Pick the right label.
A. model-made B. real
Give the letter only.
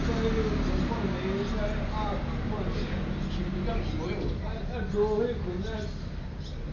B